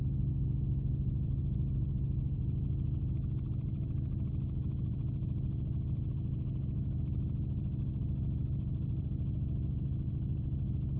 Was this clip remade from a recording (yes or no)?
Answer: no